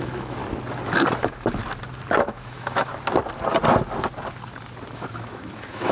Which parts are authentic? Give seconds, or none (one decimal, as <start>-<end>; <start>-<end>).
0.4-1.2; 1.6-2.2; 2.9-4.9

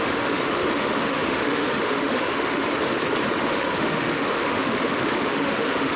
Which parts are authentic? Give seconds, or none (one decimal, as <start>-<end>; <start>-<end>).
2.6-3.4

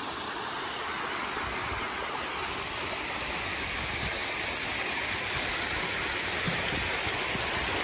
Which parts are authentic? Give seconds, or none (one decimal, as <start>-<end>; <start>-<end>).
0.0-7.8

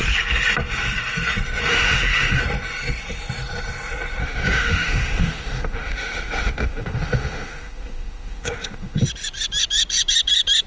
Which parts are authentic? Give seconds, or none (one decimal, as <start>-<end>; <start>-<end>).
0.0-1.7; 2.4-4.2; 9.0-10.7

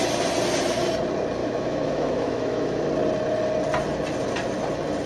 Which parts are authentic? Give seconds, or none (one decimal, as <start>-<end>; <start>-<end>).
0.0-1.4; 2.8-5.1

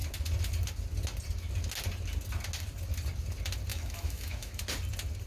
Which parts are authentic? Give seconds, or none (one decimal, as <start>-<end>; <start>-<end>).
0.0-3.7; 4.6-5.3

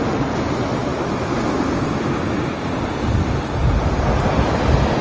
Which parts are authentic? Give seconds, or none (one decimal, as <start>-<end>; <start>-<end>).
0.0-0.9; 1.6-5.0

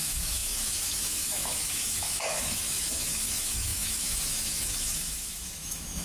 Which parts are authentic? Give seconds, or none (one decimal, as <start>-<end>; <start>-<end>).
none